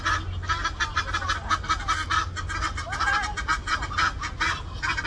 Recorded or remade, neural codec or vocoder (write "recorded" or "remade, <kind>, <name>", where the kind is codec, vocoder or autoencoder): recorded